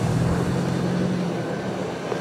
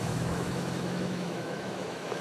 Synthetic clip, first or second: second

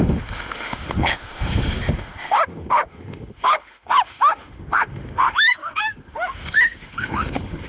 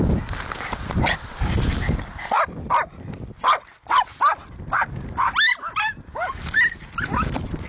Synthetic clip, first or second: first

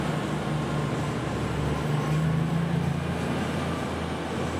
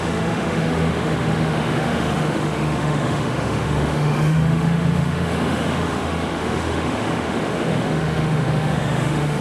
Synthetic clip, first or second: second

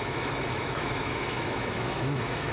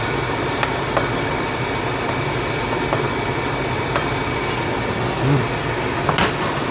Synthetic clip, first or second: first